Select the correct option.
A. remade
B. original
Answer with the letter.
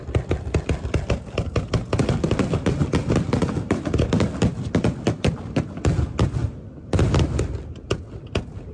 B